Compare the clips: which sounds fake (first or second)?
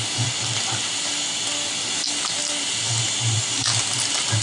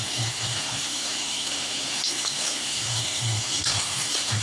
second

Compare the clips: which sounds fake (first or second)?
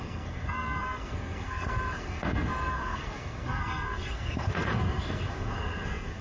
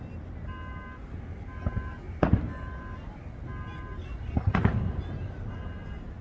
first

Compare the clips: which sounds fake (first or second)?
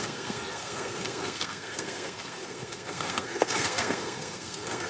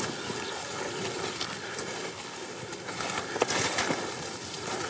first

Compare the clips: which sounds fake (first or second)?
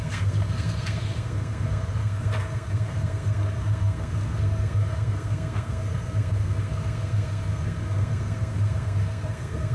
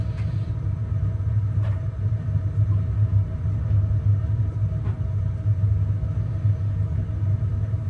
first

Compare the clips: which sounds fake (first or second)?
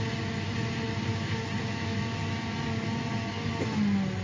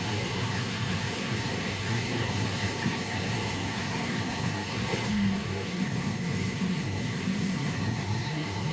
second